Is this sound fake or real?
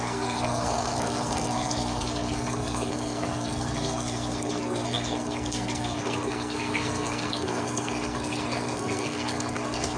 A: fake